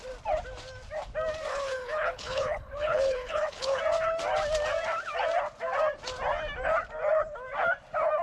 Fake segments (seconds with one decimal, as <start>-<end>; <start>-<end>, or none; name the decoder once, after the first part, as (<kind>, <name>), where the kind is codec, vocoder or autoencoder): 1.5-3.8 (codec, HILCodec)